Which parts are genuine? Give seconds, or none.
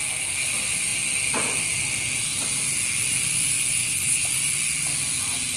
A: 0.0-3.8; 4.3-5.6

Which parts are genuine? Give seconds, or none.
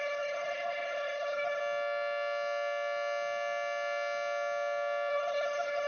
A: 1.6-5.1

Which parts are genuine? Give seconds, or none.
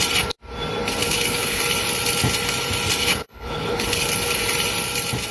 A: 0.0-1.0; 1.6-3.0; 4.0-5.3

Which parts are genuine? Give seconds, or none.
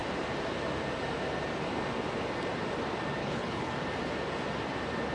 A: 0.0-3.2; 3.7-5.1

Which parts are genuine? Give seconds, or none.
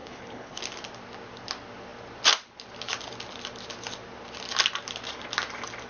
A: 0.6-5.9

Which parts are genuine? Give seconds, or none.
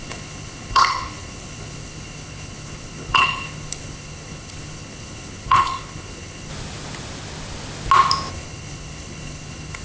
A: 6.5-8.3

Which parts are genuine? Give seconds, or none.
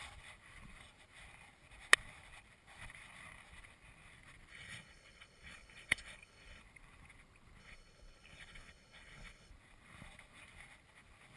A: 0.0-4.5; 6.6-7.6; 9.5-11.4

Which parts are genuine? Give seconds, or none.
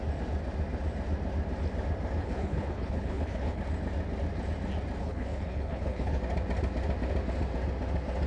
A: 0.0-2.2; 3.6-5.0; 6.2-8.3